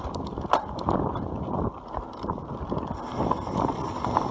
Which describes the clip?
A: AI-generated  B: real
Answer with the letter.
B